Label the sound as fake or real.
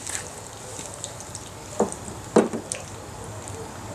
real